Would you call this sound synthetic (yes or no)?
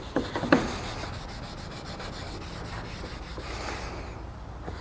no